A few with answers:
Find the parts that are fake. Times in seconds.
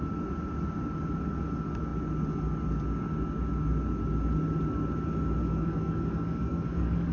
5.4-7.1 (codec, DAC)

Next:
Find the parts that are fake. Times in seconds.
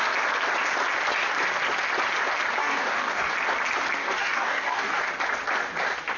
2.6-3.3 (codec, DAC); 4.0-5.0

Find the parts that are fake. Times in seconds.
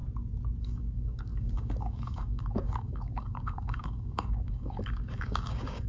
0.6-5.9 (codec, DAC)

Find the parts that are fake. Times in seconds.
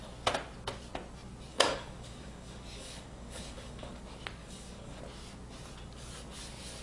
1.5-4.0 (codec, DAC); 4.4-5.0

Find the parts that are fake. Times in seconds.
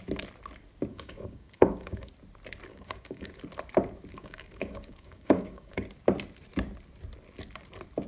0.9-2.1 (codec, DAC); 2.7-3.4; 4.1-5.9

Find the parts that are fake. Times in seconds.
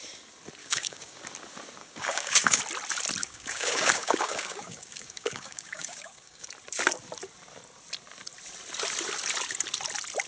0.6-1.2 (codec, DAC); 1.8-2.6; 3.2-6.5